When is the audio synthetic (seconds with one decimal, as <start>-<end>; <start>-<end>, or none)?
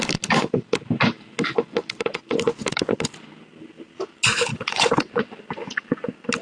4.5-5.1